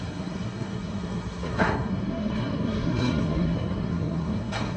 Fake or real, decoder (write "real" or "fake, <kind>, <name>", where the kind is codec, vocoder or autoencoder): fake, codec, SNAC